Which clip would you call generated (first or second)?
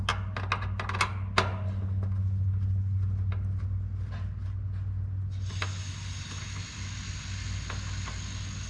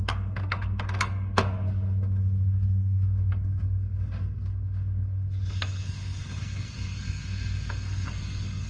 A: second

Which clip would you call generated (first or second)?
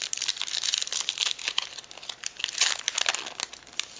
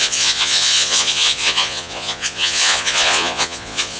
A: second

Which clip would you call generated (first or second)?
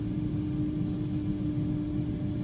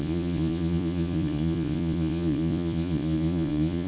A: second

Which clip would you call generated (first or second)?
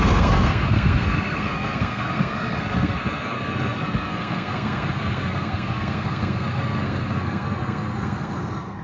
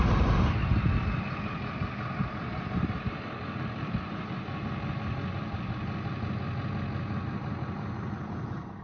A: first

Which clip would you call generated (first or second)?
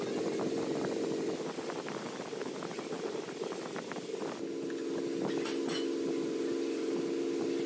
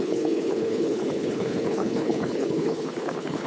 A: second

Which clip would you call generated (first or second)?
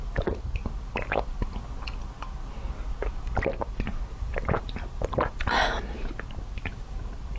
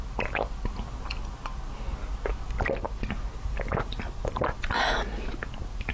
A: first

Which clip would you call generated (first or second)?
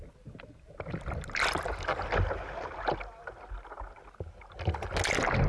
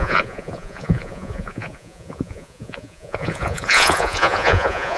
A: second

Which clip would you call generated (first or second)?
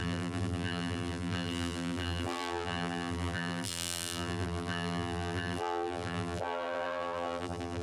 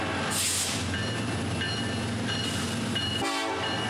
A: first